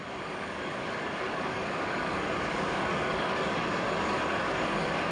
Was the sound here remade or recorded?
remade